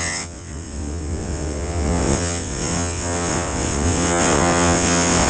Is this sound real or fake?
fake